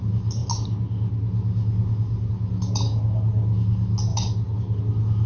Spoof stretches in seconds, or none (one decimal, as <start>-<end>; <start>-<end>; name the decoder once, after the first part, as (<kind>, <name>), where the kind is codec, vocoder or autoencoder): none